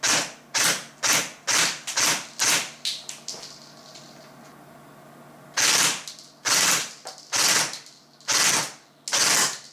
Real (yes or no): yes